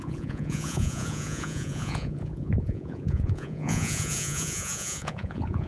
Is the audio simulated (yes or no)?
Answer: yes